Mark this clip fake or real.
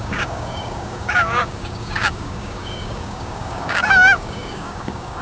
fake